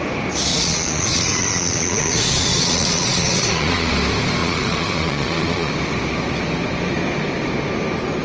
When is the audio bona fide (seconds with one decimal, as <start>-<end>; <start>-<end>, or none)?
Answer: 0.0-0.5; 3.9-4.4; 5.7-8.2